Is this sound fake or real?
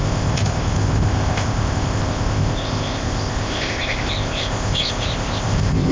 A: fake